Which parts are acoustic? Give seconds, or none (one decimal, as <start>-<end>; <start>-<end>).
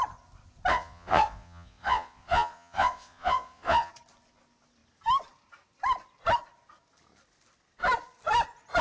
0.0-0.7; 3.9-8.8